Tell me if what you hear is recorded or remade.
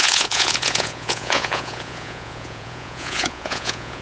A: remade